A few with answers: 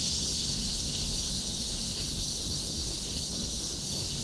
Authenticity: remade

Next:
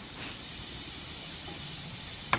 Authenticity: recorded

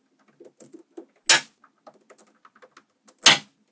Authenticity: recorded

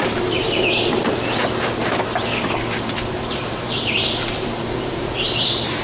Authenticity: remade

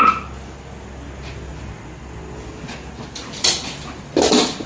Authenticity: recorded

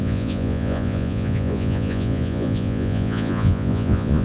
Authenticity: remade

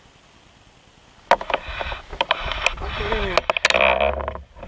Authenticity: recorded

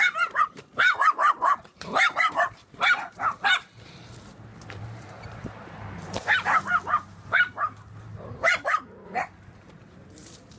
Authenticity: remade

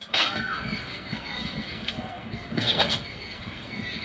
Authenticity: remade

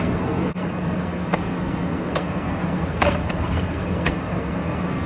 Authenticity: remade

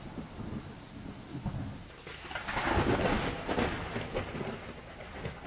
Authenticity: recorded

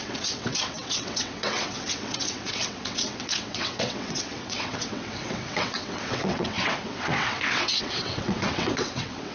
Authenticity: remade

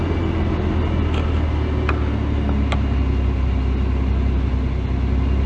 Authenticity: recorded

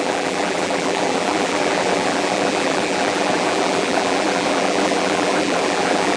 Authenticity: remade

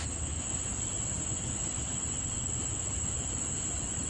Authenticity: recorded